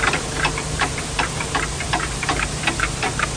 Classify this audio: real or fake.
fake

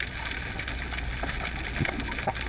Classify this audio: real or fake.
real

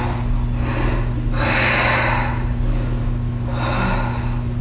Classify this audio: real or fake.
real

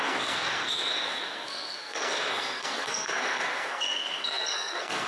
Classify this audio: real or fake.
fake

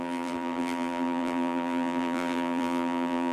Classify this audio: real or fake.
fake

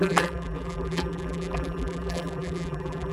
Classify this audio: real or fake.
fake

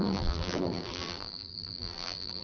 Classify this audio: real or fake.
fake